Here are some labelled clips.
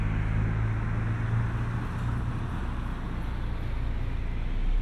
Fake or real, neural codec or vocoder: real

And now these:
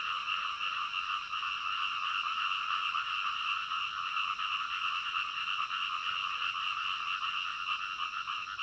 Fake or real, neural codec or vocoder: real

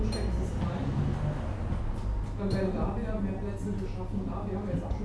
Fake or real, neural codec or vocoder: real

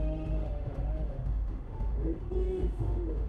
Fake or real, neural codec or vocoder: fake, autoencoder, DAC-VAE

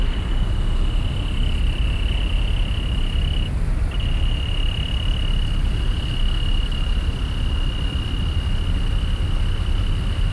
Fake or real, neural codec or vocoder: real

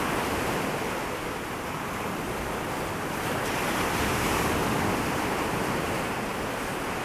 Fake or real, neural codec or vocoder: real